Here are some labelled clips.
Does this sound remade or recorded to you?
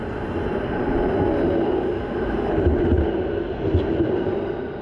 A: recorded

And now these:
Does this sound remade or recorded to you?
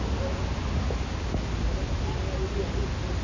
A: recorded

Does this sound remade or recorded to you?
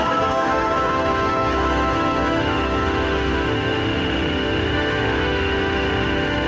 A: remade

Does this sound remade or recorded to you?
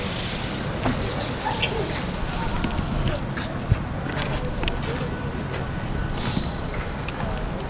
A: recorded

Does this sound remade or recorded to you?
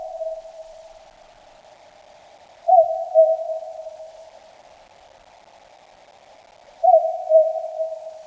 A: recorded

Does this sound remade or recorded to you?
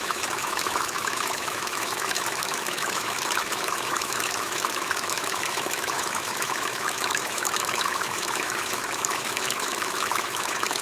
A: remade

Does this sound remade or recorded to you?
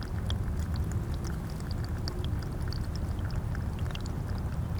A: recorded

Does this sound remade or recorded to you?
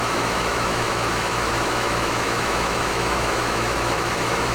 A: remade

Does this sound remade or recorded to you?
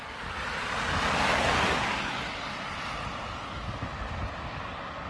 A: recorded